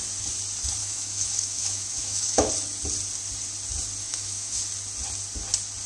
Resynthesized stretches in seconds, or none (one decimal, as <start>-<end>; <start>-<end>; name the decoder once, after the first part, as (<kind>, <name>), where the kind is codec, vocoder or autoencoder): 0.8-2.5 (autoencoder, DAC-VAE); 4.0-4.6